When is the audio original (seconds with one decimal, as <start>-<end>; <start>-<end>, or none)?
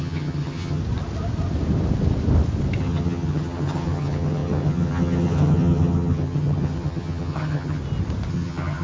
0.8-2.8; 7.8-8.3